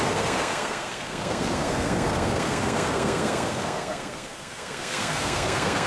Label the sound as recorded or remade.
remade